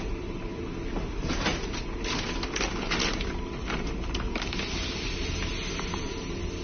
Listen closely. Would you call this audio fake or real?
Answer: real